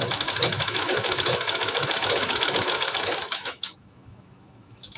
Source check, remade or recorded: remade